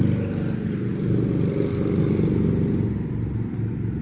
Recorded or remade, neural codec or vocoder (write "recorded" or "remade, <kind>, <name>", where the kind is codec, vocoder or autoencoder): recorded